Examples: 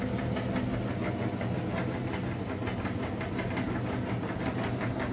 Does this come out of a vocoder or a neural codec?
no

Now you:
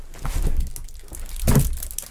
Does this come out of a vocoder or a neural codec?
no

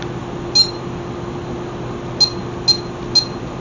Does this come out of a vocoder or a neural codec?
no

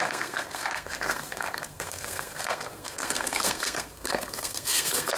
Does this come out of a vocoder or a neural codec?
yes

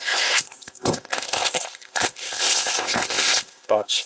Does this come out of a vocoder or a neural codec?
yes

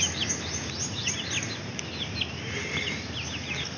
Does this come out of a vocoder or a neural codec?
no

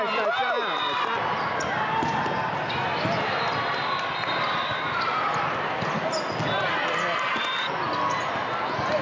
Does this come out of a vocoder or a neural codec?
no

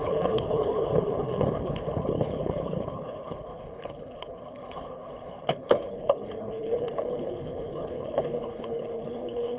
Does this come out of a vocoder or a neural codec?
yes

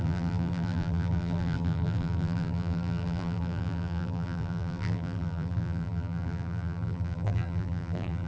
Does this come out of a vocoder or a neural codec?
yes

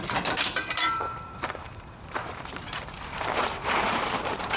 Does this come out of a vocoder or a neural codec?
yes